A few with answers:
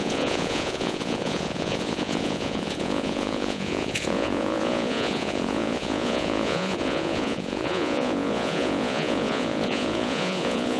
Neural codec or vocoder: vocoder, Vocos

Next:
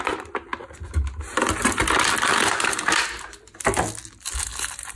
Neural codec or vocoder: none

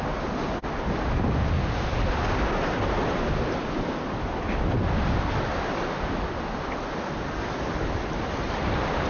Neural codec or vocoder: none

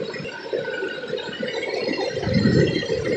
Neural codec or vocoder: none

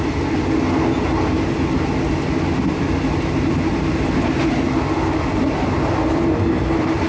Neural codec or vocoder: none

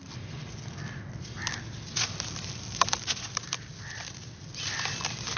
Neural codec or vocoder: none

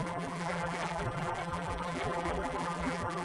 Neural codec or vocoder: vocoder, BigVGAN v2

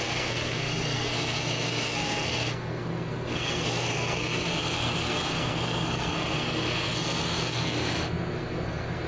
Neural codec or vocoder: codec, SNAC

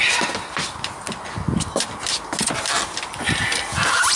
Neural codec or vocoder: none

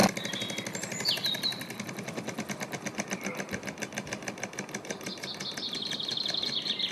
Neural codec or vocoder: none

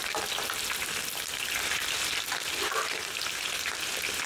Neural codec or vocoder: none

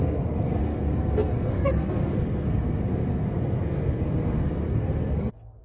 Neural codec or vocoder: codec, SNAC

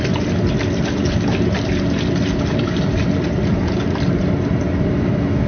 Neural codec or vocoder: none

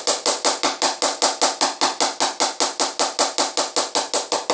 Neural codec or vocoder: none